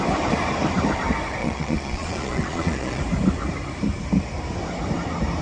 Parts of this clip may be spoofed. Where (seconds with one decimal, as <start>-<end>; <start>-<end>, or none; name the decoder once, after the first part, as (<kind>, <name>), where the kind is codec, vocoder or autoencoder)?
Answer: 1.4-3.0 (vocoder, Vocos)